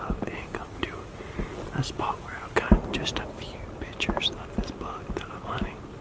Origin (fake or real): real